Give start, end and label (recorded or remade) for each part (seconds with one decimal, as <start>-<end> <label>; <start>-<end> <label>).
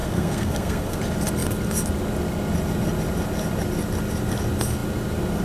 0.0-1.0 remade; 1.0-5.4 recorded